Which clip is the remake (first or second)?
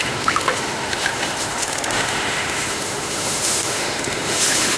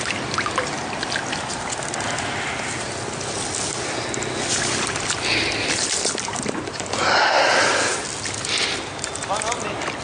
first